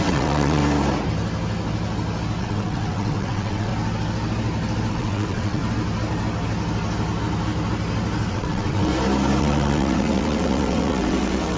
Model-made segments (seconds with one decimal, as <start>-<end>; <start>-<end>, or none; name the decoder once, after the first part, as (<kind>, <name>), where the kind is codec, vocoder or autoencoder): 0.0-0.6 (vocoder, WaveNeXt); 2.4-3.7; 4.9-5.6; 8.3-8.9; 9.4-11.6